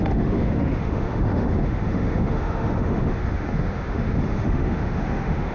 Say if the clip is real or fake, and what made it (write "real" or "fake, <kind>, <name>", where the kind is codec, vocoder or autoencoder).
fake, autoencoder, DAC-VAE